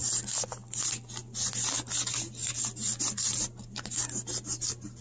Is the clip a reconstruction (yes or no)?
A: no